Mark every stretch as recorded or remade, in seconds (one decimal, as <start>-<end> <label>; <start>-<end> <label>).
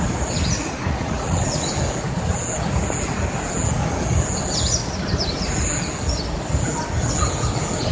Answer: 0.0-0.6 recorded; 0.6-1.7 remade; 1.7-7.9 recorded